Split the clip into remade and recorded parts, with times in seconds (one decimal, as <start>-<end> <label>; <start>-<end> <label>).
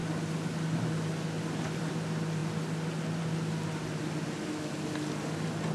0.0-5.7 recorded